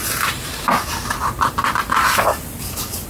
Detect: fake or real fake